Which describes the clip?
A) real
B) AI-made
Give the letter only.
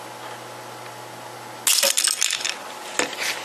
A